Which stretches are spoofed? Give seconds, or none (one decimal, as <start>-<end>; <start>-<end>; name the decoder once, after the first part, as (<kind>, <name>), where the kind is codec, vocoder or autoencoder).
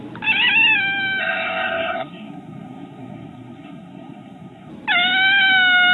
1.2-4.7 (codec, SNAC)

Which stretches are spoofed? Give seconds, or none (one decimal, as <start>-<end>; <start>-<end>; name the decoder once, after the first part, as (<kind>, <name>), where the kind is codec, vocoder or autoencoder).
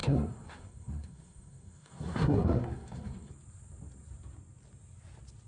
0.0-3.3 (codec, SNAC)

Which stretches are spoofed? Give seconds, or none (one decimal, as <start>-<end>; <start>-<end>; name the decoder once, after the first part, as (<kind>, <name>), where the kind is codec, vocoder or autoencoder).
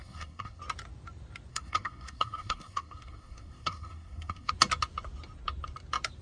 0.0-0.6 (codec, SNAC); 1.5-4.5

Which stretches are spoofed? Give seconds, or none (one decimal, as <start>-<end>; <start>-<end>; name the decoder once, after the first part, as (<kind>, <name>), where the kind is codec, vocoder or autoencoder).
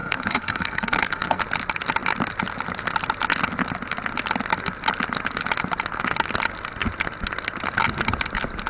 0.0-1.4 (codec, SNAC)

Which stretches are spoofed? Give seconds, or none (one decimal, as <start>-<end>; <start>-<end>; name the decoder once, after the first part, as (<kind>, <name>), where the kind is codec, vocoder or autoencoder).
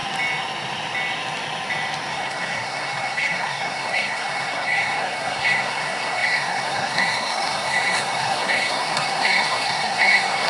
2.1-10.5 (codec, SNAC)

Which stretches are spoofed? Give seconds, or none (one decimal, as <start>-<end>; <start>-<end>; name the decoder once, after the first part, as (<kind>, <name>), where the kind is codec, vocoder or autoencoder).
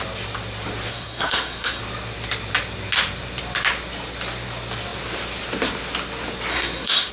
0.9-1.8 (codec, SNAC); 6.5-7.1